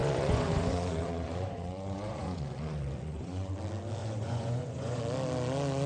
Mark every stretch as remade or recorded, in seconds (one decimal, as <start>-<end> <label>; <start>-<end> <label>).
0.0-3.5 remade; 3.5-4.0 recorded; 4.0-5.0 remade; 5.0-5.9 recorded